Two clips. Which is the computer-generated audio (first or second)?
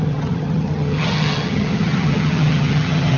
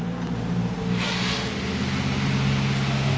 first